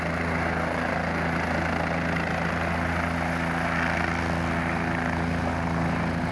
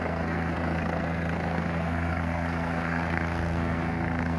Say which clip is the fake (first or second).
second